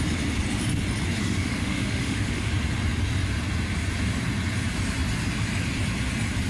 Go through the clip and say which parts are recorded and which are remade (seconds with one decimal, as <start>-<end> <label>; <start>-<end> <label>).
0.0-1.2 recorded; 1.2-2.5 remade; 2.5-6.5 recorded